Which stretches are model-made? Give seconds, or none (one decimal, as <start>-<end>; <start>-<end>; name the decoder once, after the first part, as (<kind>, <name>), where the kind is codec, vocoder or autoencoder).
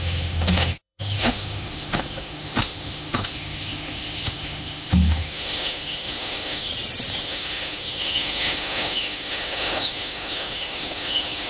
0.0-6.7 (autoencoder, DAC-VAE); 7.2-11.5